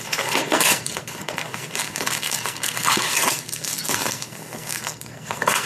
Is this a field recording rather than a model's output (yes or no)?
no